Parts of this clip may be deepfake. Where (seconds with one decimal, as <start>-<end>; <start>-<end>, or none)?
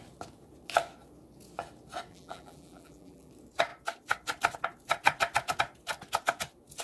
2.1-3.3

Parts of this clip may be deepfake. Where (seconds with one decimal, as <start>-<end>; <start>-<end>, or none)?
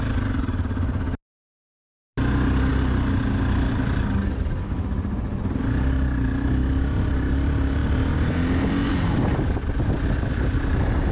none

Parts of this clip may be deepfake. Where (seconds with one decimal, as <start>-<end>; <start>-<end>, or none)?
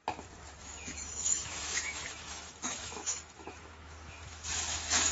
0.6-5.1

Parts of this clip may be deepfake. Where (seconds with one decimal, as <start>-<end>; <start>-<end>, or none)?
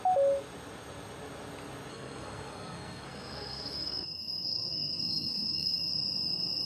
1.9-5.9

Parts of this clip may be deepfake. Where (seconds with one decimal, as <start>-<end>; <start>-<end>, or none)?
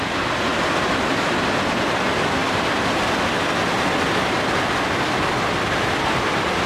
0.5-2.0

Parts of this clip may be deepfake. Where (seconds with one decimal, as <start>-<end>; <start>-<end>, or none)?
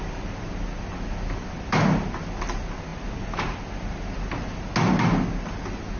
none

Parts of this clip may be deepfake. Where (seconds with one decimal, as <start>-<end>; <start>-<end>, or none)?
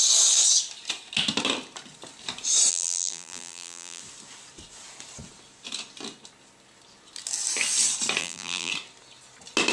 2.7-4.0; 8.2-8.7